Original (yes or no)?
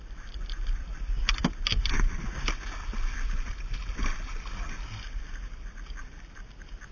yes